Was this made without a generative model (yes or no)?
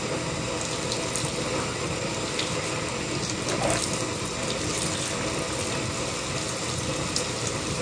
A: yes